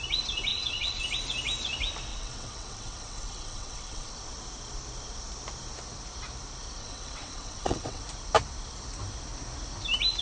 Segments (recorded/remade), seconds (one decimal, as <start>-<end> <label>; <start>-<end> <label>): 0.0-0.5 recorded; 0.5-1.0 remade; 1.0-2.1 recorded; 2.1-4.1 remade; 4.1-6.8 recorded; 6.8-8.0 remade; 8.0-10.2 recorded